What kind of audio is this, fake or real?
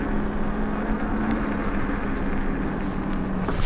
real